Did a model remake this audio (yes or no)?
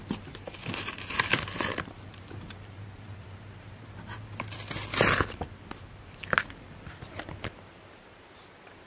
yes